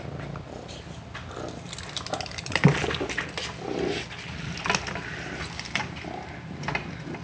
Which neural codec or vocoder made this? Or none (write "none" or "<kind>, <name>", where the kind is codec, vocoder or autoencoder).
none